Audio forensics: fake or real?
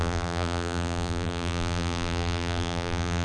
fake